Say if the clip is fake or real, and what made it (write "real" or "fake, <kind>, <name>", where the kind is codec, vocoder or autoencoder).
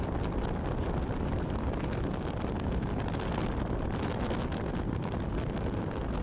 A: real